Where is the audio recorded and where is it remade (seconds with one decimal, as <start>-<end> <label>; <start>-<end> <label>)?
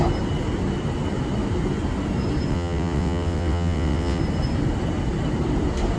0.0-2.5 recorded; 2.5-4.2 remade; 4.2-6.0 recorded